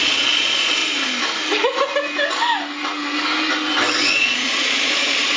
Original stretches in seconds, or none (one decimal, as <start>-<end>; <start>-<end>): 0.8-4.0

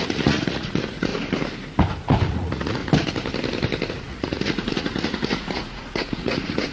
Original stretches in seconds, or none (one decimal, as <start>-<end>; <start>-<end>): 1.1-2.3; 2.8-3.9